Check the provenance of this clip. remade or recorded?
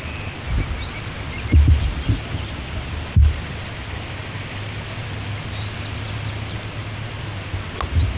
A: recorded